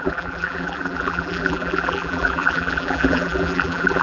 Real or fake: fake